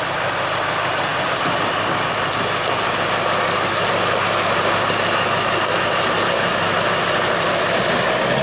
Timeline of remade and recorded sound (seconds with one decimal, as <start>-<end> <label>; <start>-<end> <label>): 0.0-8.4 recorded